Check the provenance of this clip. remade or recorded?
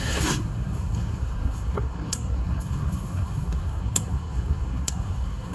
remade